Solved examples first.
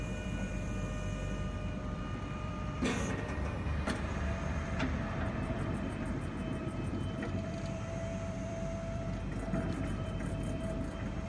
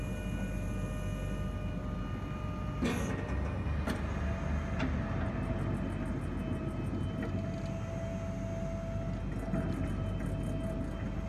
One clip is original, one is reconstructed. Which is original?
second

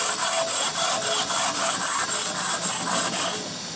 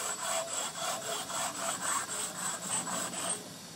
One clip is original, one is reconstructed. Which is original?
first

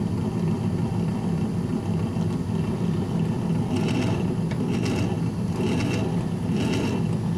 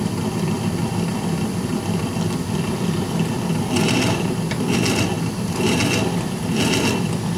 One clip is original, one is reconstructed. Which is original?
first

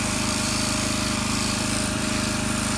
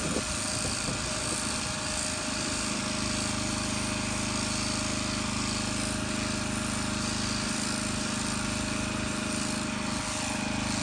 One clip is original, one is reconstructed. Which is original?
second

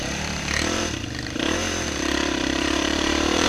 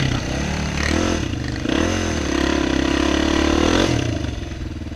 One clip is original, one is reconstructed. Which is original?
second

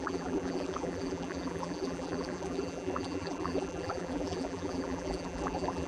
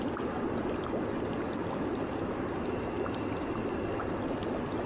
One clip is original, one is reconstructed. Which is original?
second